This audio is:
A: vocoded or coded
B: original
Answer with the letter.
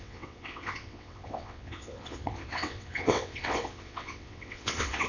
A